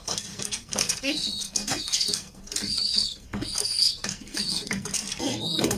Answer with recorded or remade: remade